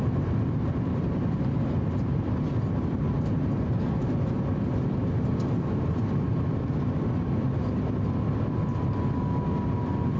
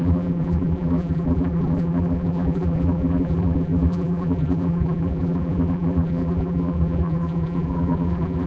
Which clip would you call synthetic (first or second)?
second